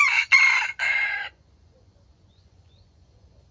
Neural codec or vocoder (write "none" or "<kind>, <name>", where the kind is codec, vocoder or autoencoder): vocoder, Vocos